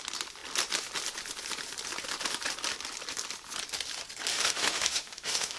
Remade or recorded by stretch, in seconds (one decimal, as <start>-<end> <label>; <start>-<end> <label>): 0.0-4.3 recorded; 4.3-5.6 remade